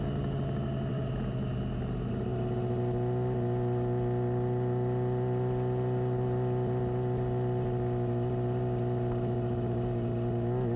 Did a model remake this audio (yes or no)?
no